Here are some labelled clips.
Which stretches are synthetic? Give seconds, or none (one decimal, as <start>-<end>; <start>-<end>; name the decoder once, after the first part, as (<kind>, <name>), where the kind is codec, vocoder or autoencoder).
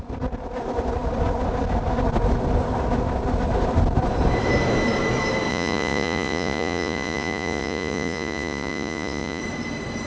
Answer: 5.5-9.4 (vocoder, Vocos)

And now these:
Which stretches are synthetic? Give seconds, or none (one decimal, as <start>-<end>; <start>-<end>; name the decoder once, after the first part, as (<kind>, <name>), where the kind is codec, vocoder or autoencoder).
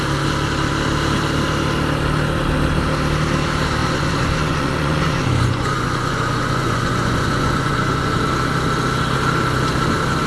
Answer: 3.8-8.2 (vocoder, Vocos)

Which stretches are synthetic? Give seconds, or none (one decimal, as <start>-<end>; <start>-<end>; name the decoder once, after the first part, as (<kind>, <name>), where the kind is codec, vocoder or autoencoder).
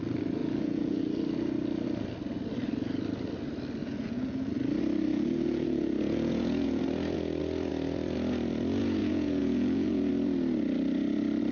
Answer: 0.4-1.0 (vocoder, Vocos); 3.8-4.5; 5.1-6.8; 9.0-10.1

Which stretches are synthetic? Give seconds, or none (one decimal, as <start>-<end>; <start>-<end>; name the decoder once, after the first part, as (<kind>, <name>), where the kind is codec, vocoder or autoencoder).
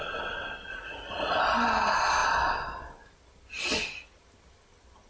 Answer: 0.7-1.4 (vocoder, Vocos)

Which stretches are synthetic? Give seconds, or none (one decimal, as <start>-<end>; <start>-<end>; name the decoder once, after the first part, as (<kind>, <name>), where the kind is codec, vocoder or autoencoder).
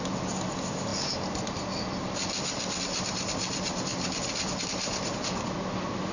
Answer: none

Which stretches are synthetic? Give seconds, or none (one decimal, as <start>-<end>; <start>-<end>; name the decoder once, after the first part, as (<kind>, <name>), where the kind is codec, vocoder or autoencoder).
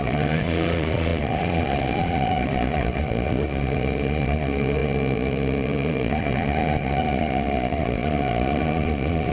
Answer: 0.0-9.3 (vocoder, Vocos)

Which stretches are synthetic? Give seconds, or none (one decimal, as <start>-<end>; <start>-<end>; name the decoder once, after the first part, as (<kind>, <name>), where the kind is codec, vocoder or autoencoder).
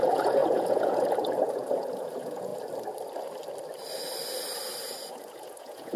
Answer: 0.0-2.5 (vocoder, Vocos); 5.1-6.0